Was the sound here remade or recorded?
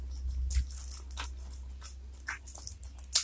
recorded